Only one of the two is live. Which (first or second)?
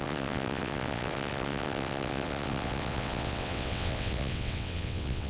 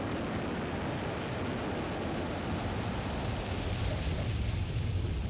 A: second